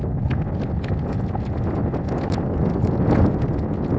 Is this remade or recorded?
recorded